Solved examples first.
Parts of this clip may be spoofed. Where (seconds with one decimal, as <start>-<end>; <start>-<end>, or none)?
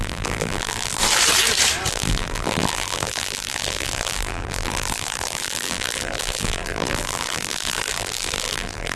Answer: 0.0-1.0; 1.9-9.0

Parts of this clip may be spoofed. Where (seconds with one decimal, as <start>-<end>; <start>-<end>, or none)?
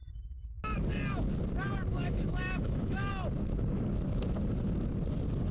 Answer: 1.9-3.1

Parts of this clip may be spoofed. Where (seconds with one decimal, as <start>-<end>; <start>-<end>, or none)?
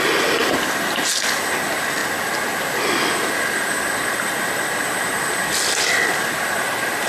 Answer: none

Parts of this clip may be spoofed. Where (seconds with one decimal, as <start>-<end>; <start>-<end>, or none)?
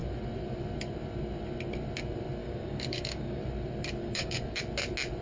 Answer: 2.4-3.4; 4.0-4.6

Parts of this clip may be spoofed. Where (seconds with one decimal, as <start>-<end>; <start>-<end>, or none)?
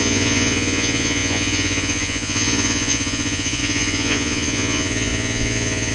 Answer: 0.0-5.9